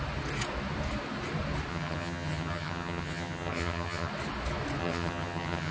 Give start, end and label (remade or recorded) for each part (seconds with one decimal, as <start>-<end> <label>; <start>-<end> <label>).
0.0-1.7 recorded; 1.7-4.1 remade; 4.1-4.8 recorded; 4.8-5.7 remade